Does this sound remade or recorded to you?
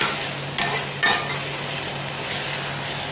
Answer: recorded